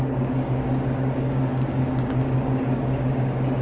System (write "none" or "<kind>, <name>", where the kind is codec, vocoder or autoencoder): codec, DAC